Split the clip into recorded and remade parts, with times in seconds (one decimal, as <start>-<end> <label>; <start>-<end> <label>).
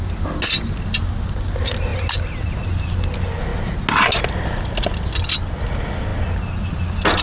0.0-7.2 recorded